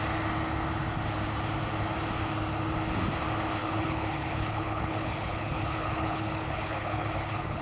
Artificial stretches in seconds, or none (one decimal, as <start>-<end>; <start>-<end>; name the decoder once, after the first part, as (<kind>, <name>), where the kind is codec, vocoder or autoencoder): 3.6-7.6 (codec, HILCodec)